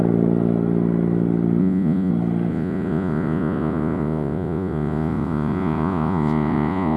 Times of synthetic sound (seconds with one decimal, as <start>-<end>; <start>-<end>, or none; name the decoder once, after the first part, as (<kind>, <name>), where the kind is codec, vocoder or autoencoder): 1.6-2.1 (vocoder, Vocos); 2.5-7.0